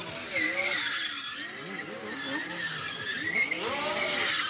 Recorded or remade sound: recorded